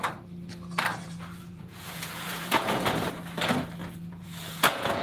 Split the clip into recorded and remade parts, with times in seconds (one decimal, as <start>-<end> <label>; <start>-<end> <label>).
0.0-0.9 recorded; 0.9-3.1 remade; 3.1-3.8 recorded; 3.8-5.0 remade